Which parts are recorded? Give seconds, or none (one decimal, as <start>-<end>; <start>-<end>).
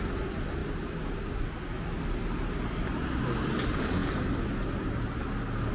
0.0-5.7